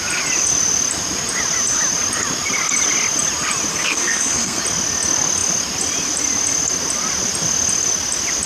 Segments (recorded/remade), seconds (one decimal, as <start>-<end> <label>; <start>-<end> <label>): 0.0-3.7 recorded; 3.7-4.6 remade; 4.6-8.5 recorded